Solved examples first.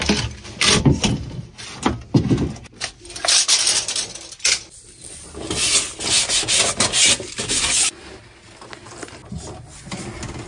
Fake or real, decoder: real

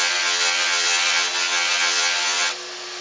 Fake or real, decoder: real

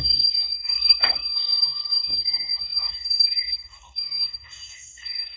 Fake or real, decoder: fake, codec, SNAC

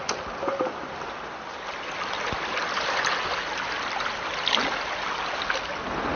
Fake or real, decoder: real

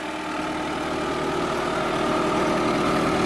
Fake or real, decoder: real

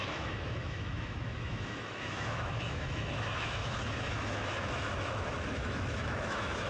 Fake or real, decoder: fake, autoencoder, DAC-VAE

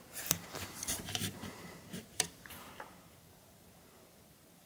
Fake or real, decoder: fake, vocoder, BigVGAN v2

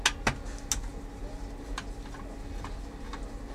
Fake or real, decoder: real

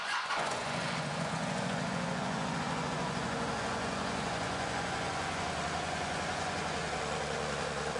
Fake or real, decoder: fake, vocoder, Vocos